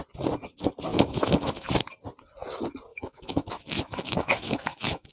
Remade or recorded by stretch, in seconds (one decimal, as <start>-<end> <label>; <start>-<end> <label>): 0.0-0.9 recorded; 0.9-1.7 remade; 1.7-2.9 recorded; 2.9-5.1 remade